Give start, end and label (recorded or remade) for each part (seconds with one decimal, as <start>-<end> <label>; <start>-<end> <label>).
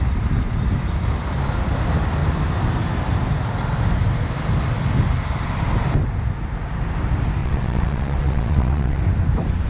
0.0-7.4 recorded; 7.4-9.0 remade; 9.0-9.7 recorded